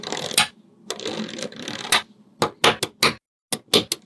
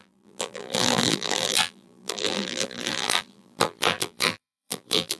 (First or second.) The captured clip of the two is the first